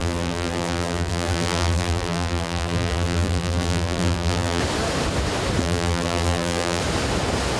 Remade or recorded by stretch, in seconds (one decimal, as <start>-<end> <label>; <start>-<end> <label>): 0.0-4.6 remade; 4.6-5.6 recorded; 5.6-6.8 remade; 6.8-7.6 recorded